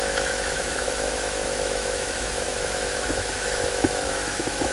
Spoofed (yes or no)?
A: yes